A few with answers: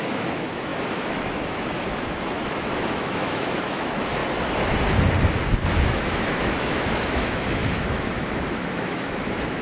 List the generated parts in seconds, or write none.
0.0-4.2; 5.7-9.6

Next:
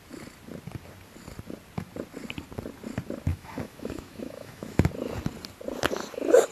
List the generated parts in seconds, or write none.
3.3-4.9

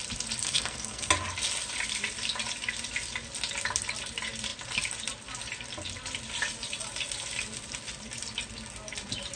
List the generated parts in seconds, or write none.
0.4-1.1

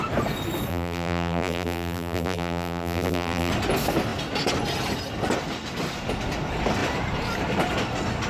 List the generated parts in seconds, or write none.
0.7-3.5

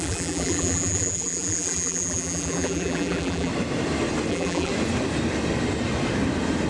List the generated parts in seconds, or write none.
0.0-3.5; 4.3-4.7

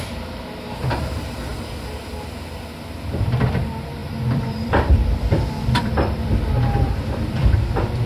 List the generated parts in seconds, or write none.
4.0-8.1